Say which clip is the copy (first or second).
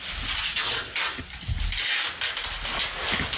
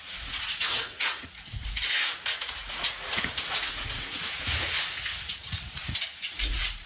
second